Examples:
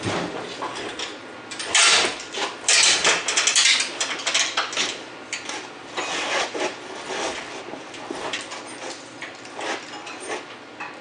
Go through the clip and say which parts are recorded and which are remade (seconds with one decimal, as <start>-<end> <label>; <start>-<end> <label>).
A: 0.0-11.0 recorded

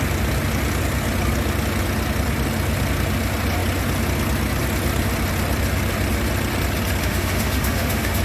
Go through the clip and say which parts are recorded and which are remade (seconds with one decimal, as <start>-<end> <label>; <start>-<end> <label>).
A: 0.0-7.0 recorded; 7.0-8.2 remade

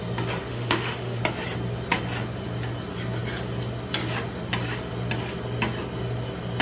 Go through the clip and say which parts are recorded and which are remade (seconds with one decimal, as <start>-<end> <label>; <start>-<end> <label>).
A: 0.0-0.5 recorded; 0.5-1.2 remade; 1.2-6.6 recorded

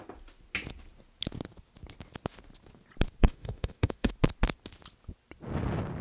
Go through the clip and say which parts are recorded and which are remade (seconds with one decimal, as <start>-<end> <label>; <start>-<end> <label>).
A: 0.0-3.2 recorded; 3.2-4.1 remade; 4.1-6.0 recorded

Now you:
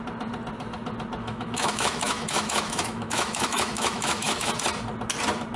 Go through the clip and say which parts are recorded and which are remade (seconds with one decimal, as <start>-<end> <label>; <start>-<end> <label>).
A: 0.0-1.2 recorded; 1.2-4.5 remade; 4.5-5.6 recorded